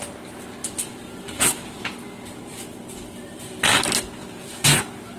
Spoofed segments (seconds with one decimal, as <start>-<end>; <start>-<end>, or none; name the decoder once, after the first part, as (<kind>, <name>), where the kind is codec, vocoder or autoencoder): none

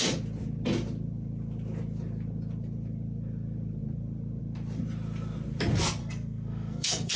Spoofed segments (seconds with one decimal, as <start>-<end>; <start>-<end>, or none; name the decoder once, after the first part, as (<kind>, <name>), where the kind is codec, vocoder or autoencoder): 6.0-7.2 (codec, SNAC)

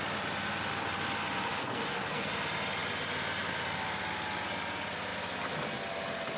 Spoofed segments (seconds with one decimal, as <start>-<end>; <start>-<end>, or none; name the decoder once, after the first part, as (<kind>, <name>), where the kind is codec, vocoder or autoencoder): 1.6-2.3 (codec, SNAC)

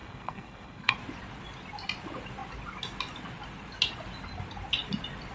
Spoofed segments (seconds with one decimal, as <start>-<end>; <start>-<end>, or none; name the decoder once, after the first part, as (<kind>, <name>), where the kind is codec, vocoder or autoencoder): 0.0-0.9 (codec, SNAC)

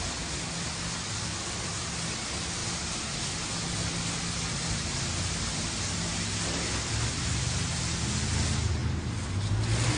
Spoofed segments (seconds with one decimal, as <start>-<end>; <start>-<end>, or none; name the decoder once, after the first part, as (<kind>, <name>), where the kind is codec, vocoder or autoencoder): none

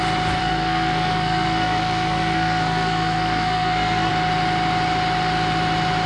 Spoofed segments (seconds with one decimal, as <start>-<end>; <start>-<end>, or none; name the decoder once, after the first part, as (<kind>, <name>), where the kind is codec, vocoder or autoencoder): 0.4-4.1 (codec, SNAC)